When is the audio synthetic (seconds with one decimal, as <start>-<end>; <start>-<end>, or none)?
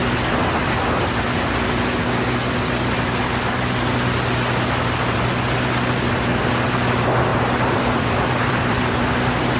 7.3-8.8